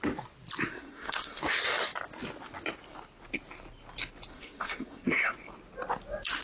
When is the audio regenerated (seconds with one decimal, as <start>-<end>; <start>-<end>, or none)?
0.7-1.4; 4.3-5.3